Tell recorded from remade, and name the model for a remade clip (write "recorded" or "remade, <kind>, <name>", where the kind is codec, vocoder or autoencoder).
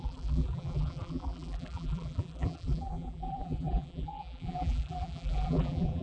remade, vocoder, BigVGAN v2